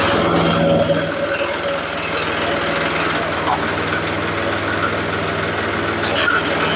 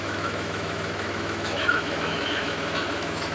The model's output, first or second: second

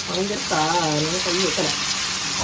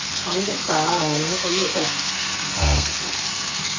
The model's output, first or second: second